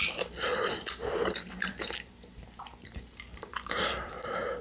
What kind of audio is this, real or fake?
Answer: fake